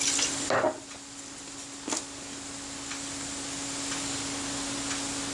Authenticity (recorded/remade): recorded